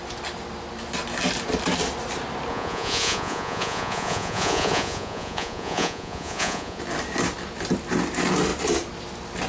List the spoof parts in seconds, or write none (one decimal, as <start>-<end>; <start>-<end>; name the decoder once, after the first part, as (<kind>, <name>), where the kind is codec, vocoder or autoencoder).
2.5-6.8 (vocoder, Vocos)